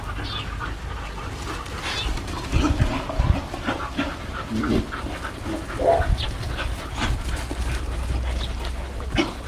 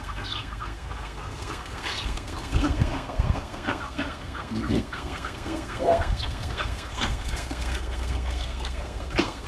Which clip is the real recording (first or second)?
first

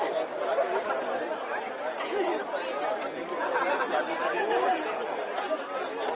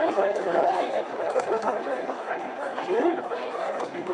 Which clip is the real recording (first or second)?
first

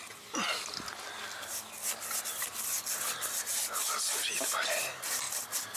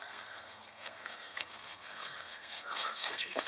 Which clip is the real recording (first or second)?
first